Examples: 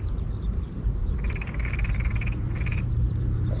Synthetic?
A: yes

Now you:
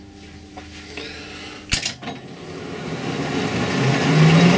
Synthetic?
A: no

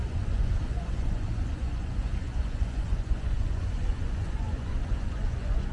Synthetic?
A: yes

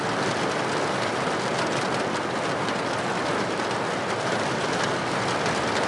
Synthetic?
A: no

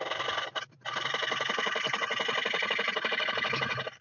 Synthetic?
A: no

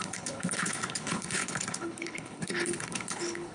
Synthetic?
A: yes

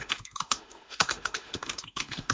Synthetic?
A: yes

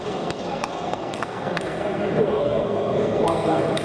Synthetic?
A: yes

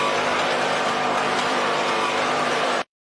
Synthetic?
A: yes